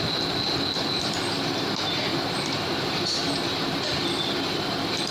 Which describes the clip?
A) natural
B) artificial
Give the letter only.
B